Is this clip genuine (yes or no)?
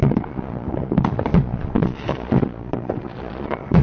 no